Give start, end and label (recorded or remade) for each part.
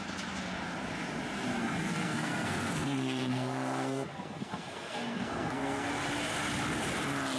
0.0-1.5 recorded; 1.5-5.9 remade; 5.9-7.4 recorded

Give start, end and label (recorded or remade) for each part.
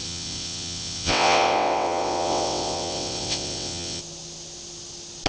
0.0-4.0 remade; 4.0-5.3 recorded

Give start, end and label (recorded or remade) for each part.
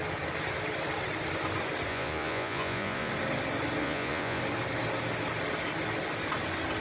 0.0-1.9 recorded; 1.9-3.1 remade; 3.1-3.8 recorded; 3.8-4.4 remade; 4.4-6.8 recorded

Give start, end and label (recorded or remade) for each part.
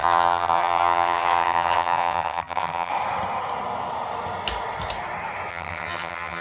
0.0-2.9 remade; 2.9-5.5 recorded; 5.5-6.4 remade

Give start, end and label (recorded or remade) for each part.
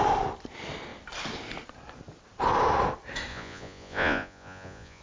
0.0-3.3 recorded; 3.3-5.0 remade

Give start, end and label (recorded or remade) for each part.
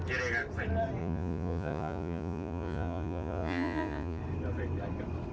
0.0-1.0 recorded; 1.0-4.2 remade; 4.2-5.3 recorded